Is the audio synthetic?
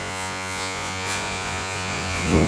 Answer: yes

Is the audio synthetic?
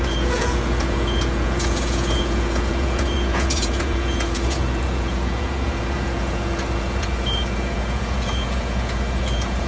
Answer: yes